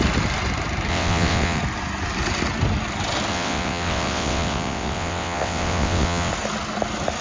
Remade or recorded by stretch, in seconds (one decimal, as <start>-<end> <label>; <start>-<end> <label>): 0.0-0.9 recorded; 0.9-1.6 remade; 1.6-3.3 recorded; 3.3-6.3 remade; 6.3-7.2 recorded